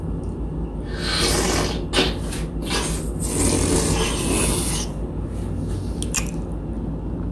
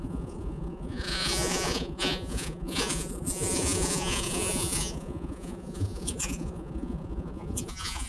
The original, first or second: first